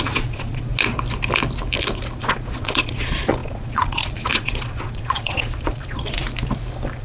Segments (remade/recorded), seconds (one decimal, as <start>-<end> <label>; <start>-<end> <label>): 0.0-0.7 remade; 0.7-2.2 recorded; 2.2-6.2 remade; 6.2-7.0 recorded